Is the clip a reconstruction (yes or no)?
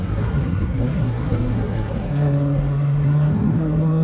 yes